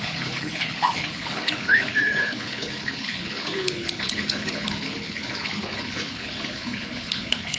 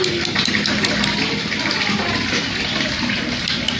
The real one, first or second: second